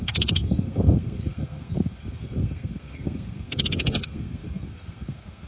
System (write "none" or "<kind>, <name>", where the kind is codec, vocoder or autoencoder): codec, SNAC